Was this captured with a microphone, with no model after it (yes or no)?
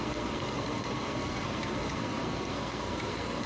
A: no